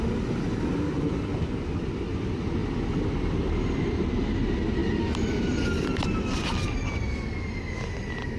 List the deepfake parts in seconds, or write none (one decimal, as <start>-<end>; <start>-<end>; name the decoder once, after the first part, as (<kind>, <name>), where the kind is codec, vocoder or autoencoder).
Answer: none